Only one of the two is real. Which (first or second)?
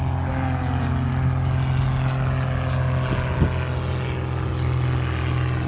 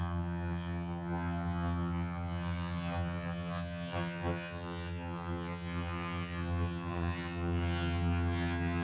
first